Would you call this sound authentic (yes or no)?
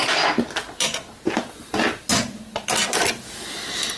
yes